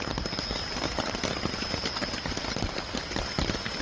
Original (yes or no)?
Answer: yes